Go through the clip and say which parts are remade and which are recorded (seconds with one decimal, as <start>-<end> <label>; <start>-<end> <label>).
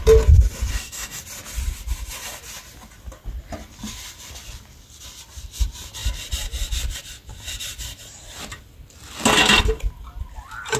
0.0-0.7 recorded; 0.7-1.2 remade; 1.2-10.8 recorded